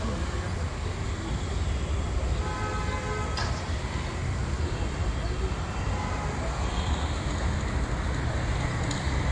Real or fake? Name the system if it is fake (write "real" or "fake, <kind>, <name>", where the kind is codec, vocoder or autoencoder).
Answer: real